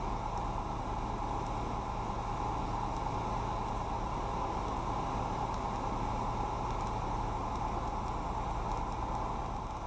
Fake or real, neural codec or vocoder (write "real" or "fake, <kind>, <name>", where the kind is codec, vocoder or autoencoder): real